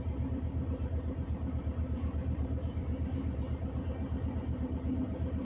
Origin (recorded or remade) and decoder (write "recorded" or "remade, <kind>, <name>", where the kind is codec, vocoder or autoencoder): remade, vocoder, BigVGAN v2